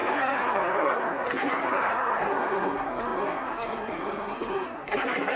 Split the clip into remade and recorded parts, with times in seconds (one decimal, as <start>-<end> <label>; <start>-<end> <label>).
0.0-5.4 remade